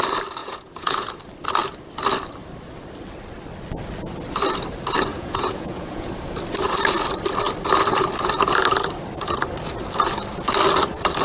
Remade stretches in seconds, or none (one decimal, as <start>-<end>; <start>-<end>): 0.4-1.2; 5.1-6.1